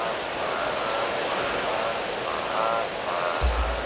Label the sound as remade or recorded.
recorded